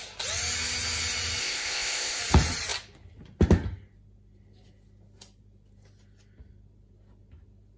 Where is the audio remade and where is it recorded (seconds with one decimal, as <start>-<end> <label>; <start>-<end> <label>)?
0.0-1.4 recorded; 1.4-2.2 remade; 2.2-7.8 recorded